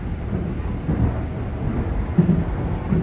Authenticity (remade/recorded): recorded